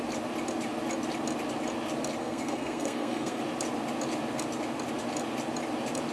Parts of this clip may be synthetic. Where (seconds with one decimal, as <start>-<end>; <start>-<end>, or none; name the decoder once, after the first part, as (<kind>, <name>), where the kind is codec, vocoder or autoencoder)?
2.2-3.4 (codec, SNAC)

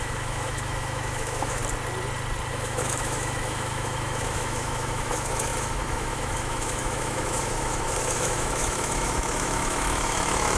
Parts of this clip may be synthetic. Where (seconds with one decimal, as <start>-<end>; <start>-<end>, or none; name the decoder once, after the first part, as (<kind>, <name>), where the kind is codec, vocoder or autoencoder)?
0.0-1.6 (autoencoder, DAC-VAE); 2.5-10.6

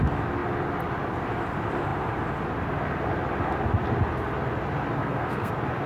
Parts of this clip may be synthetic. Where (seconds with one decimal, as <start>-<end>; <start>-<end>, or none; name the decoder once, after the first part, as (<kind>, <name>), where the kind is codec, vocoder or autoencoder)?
5.0-5.5 (codec, SNAC)

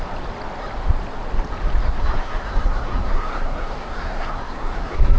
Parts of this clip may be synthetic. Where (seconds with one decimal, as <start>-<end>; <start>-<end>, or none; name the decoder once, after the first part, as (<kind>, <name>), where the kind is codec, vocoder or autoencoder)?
1.8-5.2 (codec, SNAC)

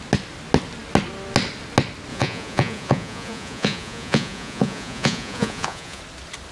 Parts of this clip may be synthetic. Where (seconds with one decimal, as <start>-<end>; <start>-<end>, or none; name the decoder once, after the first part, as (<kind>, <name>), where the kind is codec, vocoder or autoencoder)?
2.1-6.0 (vocoder, Vocos)

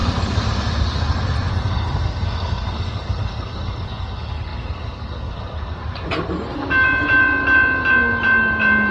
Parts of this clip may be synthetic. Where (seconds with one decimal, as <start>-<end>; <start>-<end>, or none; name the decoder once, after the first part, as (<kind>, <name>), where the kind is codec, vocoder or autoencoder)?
1.5-5.8 (codec, SNAC)